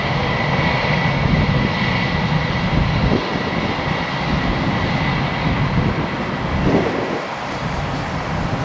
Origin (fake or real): real